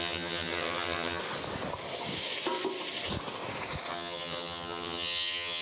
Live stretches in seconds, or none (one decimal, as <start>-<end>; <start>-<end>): 1.2-3.9